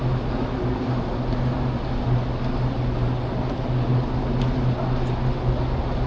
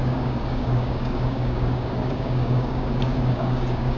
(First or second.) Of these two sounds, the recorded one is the first